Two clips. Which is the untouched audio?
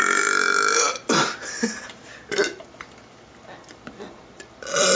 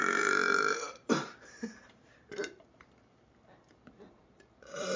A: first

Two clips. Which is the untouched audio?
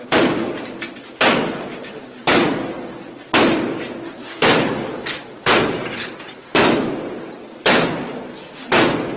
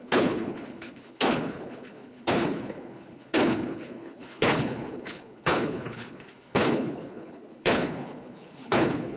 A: first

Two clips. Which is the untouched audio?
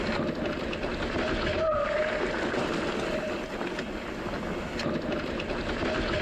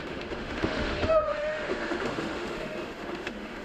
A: first